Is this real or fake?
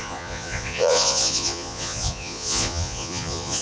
fake